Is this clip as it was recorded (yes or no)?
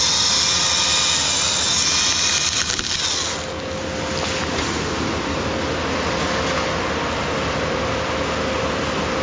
yes